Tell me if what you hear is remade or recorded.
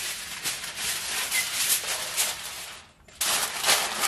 recorded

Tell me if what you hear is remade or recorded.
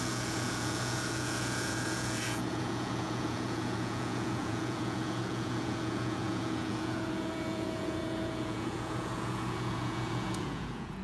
remade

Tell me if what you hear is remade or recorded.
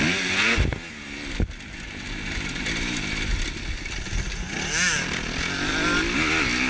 recorded